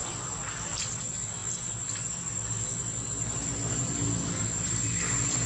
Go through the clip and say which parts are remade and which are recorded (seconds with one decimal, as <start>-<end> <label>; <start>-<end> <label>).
0.0-5.5 recorded